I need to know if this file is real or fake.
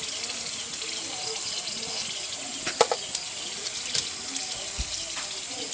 real